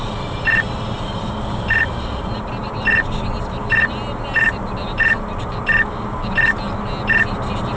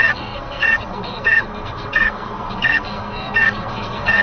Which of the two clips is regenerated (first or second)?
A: second